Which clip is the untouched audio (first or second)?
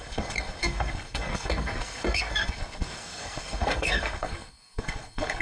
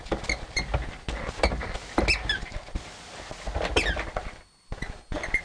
second